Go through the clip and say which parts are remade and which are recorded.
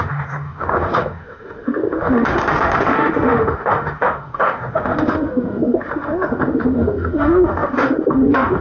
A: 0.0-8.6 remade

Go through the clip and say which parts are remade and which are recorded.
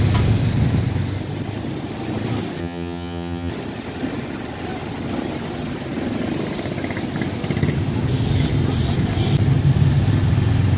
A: 0.0-2.6 recorded; 2.6-3.5 remade; 3.5-10.8 recorded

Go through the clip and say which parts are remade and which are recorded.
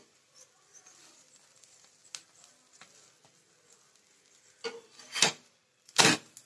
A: 0.0-6.5 recorded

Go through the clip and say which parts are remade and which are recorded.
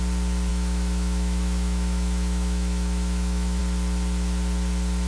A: 0.0-0.5 recorded; 0.5-3.6 remade; 3.6-5.1 recorded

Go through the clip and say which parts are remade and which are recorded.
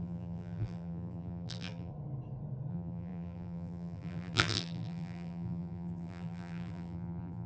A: 0.0-1.9 remade; 1.9-2.7 recorded; 2.7-7.5 remade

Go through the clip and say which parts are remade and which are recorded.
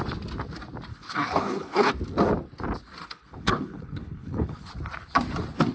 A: 0.0-0.9 recorded; 0.9-1.9 remade; 1.9-3.0 recorded; 3.0-4.7 remade; 4.7-5.7 recorded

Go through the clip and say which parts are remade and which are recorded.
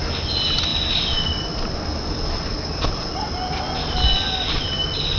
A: 0.0-5.2 recorded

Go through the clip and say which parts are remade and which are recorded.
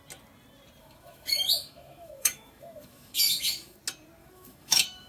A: 0.0-0.8 recorded; 0.8-3.8 remade; 3.8-4.2 recorded; 4.2-5.1 remade